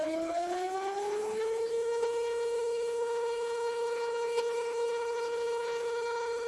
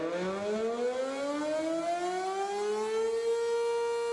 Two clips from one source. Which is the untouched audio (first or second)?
second